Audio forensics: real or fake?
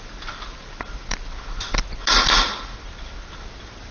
real